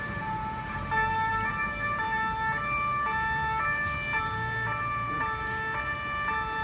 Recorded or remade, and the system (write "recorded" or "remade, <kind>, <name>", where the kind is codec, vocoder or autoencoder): remade, vocoder, BigVGAN v2